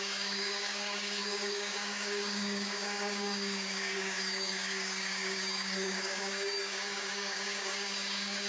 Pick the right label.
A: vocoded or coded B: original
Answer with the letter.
A